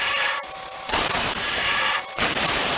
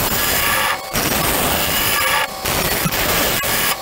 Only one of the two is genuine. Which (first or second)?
second